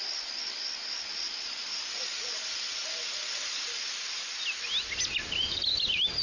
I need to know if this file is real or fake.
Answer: real